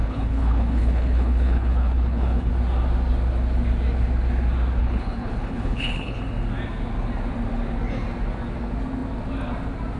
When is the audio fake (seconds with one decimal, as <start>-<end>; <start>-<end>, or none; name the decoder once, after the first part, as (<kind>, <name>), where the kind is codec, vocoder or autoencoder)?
0.0-2.5 (codec, HILCodec); 4.8-6.2